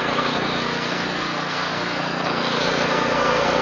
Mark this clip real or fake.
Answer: fake